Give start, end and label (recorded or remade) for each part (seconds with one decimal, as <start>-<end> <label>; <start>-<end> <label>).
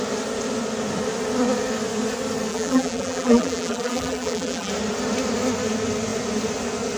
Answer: 0.0-2.5 recorded; 2.5-4.7 remade; 4.7-7.0 recorded